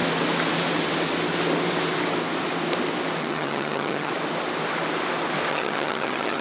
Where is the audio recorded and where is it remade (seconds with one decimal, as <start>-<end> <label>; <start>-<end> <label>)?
0.0-3.2 recorded; 3.2-4.1 remade; 4.1-5.5 recorded; 5.5-6.4 remade

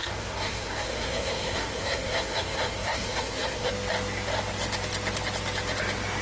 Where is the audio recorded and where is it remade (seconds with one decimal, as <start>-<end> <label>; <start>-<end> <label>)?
0.0-3.7 remade; 3.7-6.2 recorded

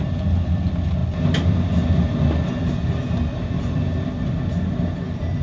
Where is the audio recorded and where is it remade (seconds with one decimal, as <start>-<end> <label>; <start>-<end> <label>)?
0.0-5.4 recorded

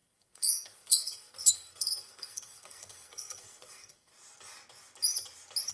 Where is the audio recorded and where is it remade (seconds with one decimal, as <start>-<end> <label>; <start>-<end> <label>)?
0.0-4.1 remade; 4.1-5.7 recorded

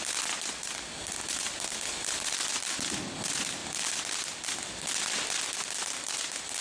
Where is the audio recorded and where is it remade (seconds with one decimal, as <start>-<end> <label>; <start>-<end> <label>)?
0.0-6.6 recorded

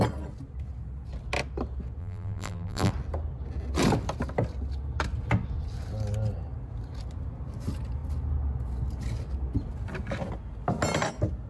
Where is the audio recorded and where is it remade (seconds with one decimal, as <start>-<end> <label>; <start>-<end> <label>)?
0.0-2.0 recorded; 2.0-2.9 remade; 2.9-11.5 recorded

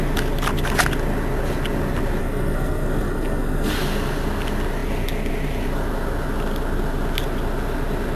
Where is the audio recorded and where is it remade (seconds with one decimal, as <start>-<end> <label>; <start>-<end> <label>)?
0.0-2.2 recorded; 2.2-3.7 remade; 3.7-8.2 recorded